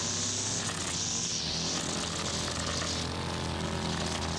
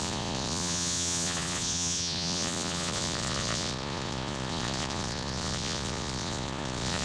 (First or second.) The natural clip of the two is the first